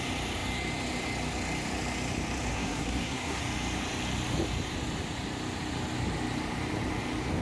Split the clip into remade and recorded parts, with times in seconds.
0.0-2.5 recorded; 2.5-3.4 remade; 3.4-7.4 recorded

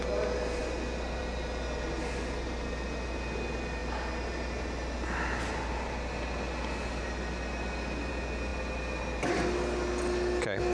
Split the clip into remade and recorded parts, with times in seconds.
0.0-10.7 recorded